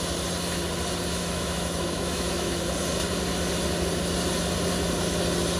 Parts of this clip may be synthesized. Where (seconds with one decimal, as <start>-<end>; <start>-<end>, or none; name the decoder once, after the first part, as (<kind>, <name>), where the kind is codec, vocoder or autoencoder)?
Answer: 1.2-2.6 (autoencoder, DAC-VAE)